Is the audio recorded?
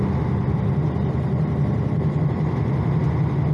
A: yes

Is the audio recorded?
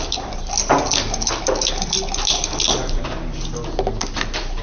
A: yes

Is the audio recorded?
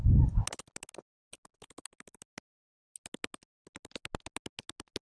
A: yes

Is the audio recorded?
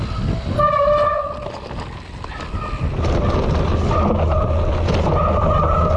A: yes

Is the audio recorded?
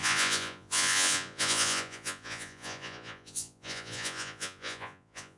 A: no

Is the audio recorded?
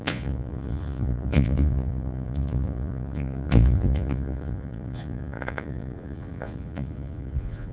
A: no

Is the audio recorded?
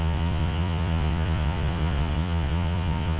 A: no